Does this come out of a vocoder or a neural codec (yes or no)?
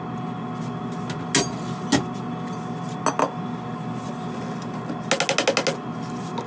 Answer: no